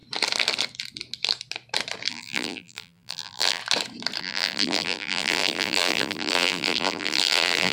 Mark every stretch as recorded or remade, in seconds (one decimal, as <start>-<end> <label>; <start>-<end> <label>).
0.0-2.1 recorded; 2.1-3.6 remade; 3.6-4.2 recorded; 4.2-7.7 remade